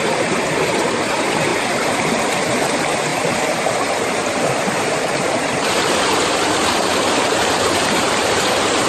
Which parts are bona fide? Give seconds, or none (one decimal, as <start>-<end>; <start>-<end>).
none